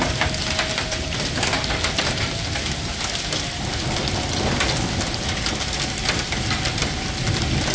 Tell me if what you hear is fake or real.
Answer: real